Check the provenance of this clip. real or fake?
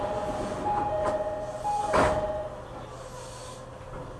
real